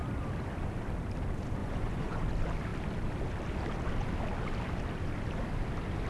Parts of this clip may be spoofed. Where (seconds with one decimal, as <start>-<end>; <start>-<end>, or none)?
1.6-2.2